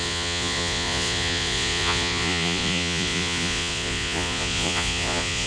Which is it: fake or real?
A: fake